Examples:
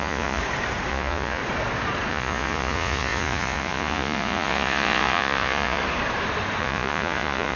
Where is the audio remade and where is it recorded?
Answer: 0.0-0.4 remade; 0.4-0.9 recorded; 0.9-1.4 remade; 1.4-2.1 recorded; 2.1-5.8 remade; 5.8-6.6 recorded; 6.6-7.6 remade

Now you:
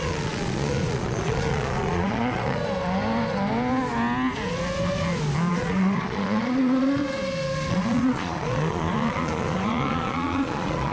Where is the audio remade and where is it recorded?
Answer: 0.0-2.6 remade; 2.6-5.5 recorded; 5.5-7.0 remade; 7.0-7.7 recorded; 7.7-10.9 remade

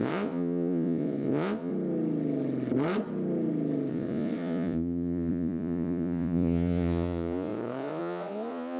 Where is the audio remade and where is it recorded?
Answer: 0.0-1.7 remade; 1.7-3.9 recorded; 3.9-8.8 remade

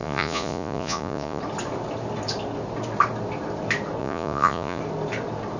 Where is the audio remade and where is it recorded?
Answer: 0.0-1.4 remade; 1.4-4.0 recorded; 4.0-4.8 remade; 4.8-5.6 recorded

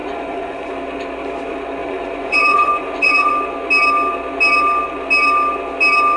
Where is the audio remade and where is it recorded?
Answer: 0.0-0.7 remade; 0.7-1.8 recorded; 1.8-3.3 remade; 3.3-6.2 recorded